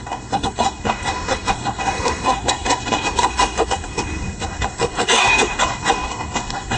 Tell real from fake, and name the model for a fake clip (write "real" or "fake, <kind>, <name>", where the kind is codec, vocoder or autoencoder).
fake, codec, SNAC